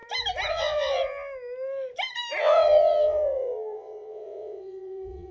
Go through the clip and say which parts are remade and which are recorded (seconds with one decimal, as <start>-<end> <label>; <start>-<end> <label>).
0.0-0.5 recorded; 0.5-1.0 remade; 1.0-2.4 recorded; 2.4-5.3 remade